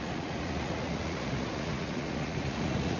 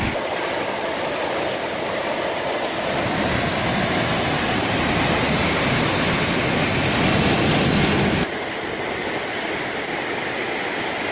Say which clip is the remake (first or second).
first